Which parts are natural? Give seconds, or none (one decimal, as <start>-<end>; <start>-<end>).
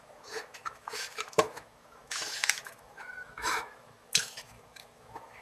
none